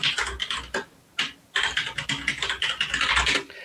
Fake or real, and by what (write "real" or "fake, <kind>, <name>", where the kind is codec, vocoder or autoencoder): real